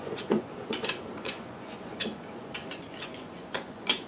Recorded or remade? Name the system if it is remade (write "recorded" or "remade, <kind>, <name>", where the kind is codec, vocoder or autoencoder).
remade, vocoder, Vocos